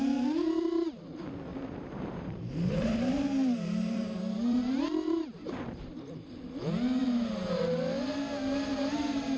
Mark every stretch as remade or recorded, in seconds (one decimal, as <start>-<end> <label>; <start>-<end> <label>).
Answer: 0.0-1.5 recorded; 1.5-6.5 remade; 6.5-7.0 recorded; 7.0-7.6 remade; 7.6-8.7 recorded; 8.7-9.4 remade